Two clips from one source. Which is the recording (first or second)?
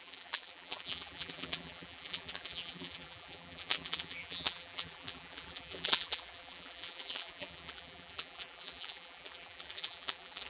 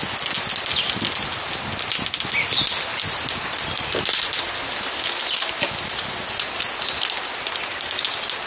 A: second